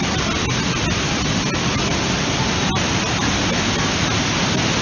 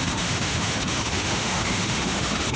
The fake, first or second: second